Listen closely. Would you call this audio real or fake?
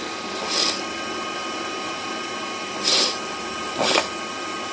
real